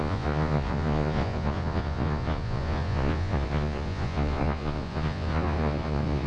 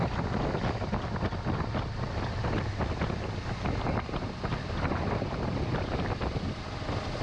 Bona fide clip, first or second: second